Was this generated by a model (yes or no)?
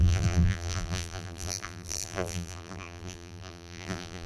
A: yes